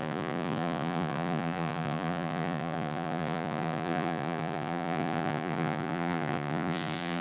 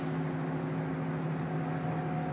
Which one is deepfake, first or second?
first